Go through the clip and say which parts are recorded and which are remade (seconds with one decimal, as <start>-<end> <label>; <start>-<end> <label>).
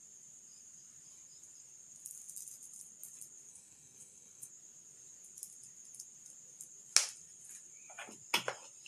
0.0-3.5 recorded; 3.5-4.5 remade; 4.5-8.9 recorded